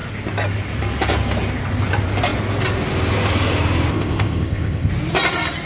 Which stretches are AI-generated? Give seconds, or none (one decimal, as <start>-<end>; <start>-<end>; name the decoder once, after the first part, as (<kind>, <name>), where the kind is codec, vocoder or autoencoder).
3.9-4.9 (codec, ZipCodec)